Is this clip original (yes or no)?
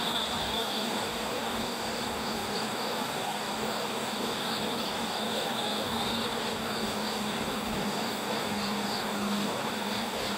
no